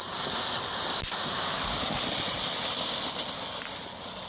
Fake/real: real